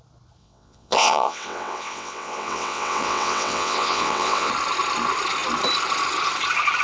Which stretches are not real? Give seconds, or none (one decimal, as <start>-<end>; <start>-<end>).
0.4-4.5